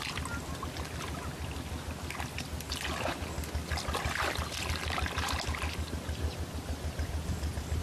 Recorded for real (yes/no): yes